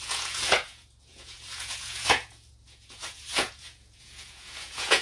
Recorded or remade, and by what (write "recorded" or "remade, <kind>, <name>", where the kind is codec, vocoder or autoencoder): remade, vocoder, Vocos